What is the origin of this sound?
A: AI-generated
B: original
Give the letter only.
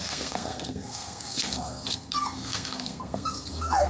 A